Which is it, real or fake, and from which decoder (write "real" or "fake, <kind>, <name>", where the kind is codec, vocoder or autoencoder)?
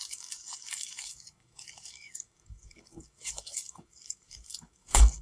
fake, codec, DAC